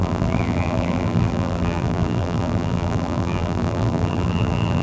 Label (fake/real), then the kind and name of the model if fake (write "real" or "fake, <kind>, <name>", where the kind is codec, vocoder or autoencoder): fake, vocoder, BigVGAN v2